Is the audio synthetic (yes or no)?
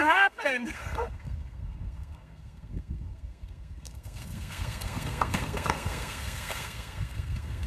yes